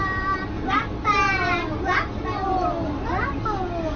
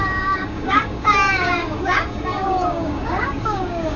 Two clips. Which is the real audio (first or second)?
first